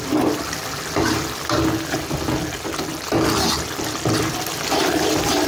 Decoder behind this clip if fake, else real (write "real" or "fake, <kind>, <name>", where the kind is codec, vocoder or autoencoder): real